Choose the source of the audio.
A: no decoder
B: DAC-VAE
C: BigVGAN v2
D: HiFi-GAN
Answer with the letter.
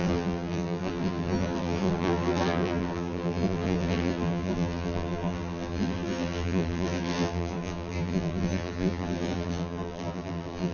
C